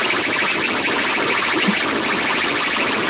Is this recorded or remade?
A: recorded